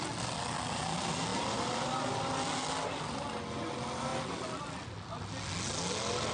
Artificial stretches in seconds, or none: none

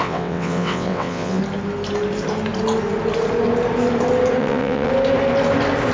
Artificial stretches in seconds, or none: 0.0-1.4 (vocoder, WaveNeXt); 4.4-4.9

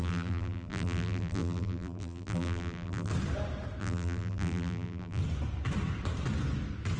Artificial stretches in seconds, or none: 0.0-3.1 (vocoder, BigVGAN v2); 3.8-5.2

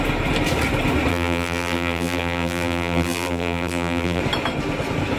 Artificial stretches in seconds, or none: 1.1-4.2 (vocoder, BigVGAN v2)

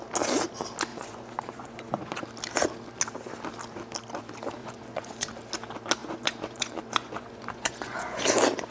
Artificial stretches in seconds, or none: 0.9-2.2 (vocoder, Vocos); 4.6-5.3; 6.0-8.2